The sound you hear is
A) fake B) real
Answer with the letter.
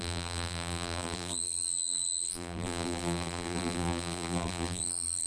A